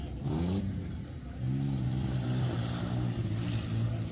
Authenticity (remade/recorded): recorded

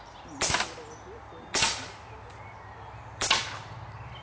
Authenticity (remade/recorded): recorded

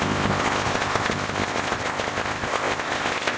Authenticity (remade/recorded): remade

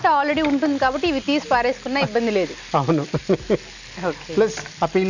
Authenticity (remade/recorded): recorded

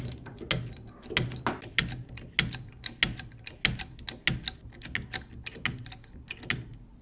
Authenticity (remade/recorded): recorded